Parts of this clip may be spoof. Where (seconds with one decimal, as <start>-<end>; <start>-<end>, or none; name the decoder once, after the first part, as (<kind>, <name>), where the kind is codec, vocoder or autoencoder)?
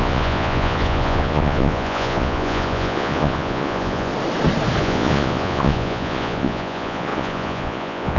0.0-4.1 (vocoder, Vocos); 4.8-8.2